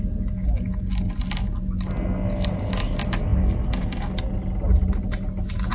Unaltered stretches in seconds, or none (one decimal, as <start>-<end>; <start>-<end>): 0.0-5.7

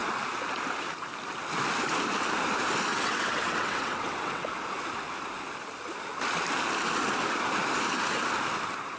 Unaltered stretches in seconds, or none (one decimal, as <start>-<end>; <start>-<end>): 0.0-2.9; 4.5-9.0

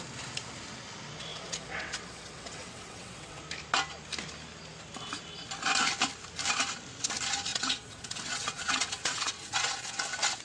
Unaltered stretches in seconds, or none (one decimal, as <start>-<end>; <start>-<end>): 0.0-1.3; 3.4-7.5; 9.9-10.4

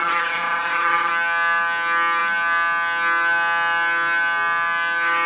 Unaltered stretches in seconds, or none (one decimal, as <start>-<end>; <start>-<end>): 1.1-5.3

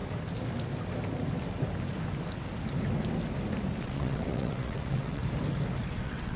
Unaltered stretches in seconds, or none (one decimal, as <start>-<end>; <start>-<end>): 0.0-3.8; 5.2-5.9